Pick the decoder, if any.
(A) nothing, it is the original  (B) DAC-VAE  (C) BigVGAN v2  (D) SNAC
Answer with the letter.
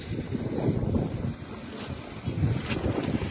A